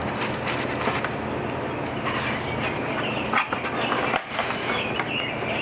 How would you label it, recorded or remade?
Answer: recorded